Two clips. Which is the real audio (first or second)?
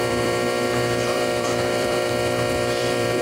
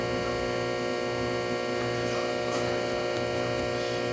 second